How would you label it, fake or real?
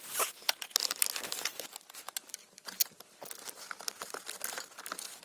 real